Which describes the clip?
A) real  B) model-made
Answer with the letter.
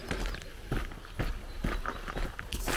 A